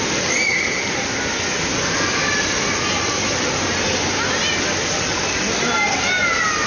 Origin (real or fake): real